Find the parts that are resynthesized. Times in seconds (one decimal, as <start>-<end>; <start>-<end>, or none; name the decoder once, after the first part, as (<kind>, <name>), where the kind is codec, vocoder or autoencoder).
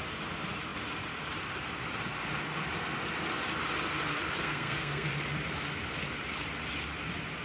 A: 4.4-5.1 (codec, SNAC)